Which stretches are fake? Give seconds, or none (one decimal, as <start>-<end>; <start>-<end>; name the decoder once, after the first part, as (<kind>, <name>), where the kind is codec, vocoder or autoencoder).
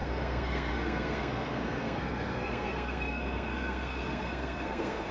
0.0-5.1 (codec, SNAC)